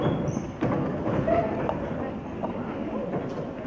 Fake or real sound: real